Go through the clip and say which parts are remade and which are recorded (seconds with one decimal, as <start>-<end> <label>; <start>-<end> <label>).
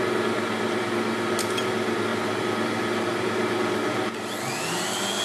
0.0-5.2 recorded